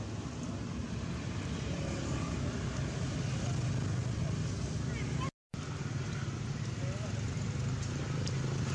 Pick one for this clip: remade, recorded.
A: recorded